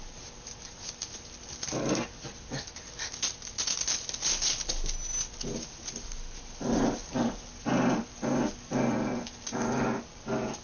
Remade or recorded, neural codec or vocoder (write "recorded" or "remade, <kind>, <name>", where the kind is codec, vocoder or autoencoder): recorded